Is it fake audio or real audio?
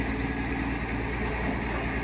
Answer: real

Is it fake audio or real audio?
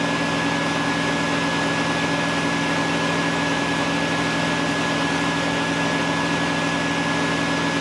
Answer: real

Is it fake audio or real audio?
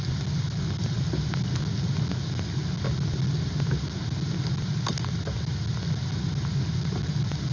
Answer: real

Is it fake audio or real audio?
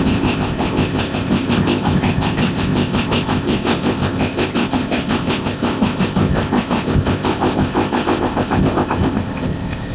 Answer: fake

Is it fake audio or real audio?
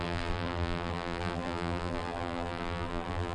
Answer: fake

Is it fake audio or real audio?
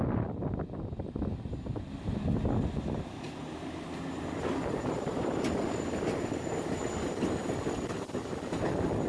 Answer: real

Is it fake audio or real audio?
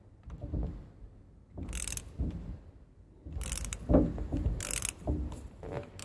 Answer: real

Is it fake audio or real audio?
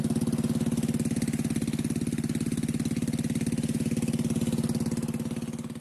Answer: real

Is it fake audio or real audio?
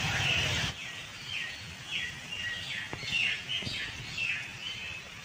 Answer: real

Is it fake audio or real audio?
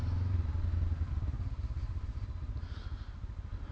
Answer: real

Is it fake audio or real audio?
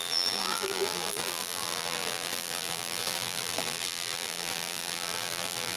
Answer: fake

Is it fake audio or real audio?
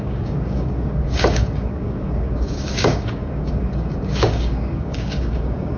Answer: fake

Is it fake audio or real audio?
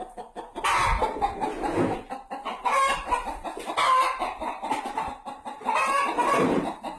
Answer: real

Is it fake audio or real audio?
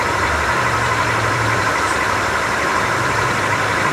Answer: fake